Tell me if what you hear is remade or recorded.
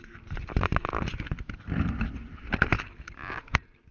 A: remade